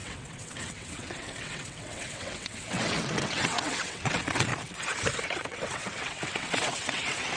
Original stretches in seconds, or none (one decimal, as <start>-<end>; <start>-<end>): 4.5-5.2